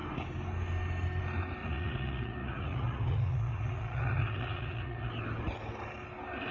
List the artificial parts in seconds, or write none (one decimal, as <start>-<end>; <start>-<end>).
1.6-5.1